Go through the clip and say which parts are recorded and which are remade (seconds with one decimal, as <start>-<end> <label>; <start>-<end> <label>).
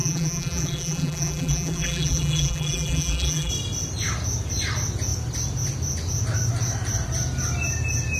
0.0-3.5 remade; 3.5-8.2 recorded